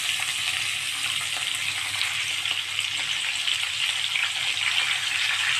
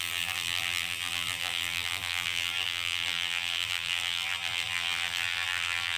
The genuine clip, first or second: first